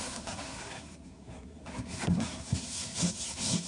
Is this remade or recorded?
remade